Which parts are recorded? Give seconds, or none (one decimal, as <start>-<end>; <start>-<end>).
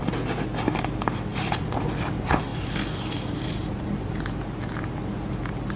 0.0-5.8